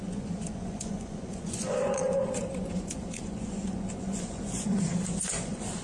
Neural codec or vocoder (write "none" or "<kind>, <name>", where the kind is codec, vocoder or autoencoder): vocoder, Vocos